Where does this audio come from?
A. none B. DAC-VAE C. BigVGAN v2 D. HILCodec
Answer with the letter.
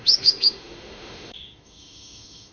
B